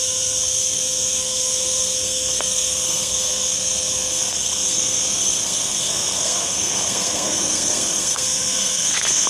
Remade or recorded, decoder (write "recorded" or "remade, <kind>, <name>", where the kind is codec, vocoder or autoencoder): remade, codec, SNAC